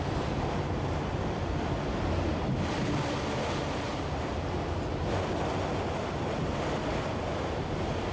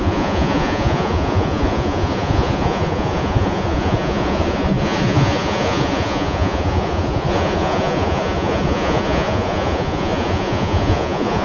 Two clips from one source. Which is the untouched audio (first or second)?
first